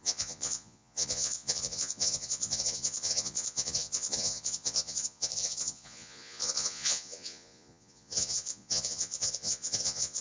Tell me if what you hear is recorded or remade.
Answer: remade